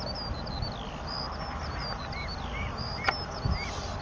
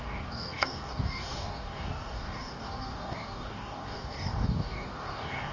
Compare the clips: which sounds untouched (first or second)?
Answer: first